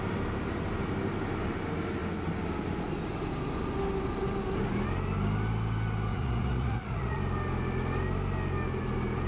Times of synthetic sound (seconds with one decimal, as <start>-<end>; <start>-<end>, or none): 6.1-7.2